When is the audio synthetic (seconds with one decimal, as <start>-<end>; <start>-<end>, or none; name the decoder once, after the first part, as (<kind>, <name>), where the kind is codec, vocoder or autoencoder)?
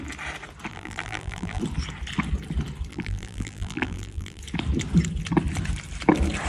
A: 0.7-1.6 (vocoder, BigVGAN v2); 2.9-4.4